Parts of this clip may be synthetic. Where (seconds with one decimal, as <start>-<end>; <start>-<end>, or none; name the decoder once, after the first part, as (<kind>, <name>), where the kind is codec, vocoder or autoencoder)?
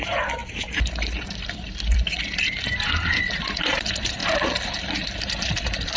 0.0-4.2 (vocoder, BigVGAN v2); 5.5-6.0